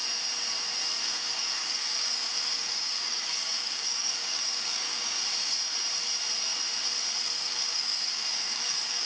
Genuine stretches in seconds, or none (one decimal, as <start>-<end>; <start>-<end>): 0.0-1.0; 5.2-7.2